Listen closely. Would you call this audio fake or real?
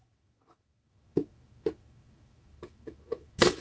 fake